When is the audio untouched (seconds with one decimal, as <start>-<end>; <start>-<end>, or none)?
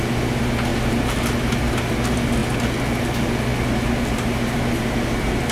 0.0-5.5